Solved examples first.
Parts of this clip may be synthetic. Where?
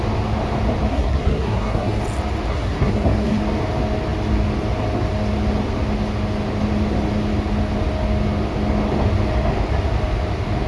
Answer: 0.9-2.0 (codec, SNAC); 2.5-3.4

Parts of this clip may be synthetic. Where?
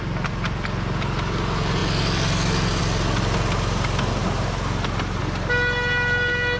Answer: none